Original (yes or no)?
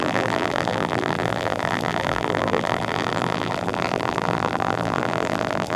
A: no